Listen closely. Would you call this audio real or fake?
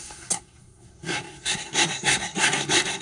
fake